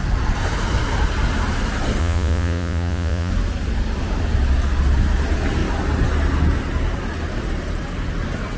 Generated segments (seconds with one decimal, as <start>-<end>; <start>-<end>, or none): 2.0-3.3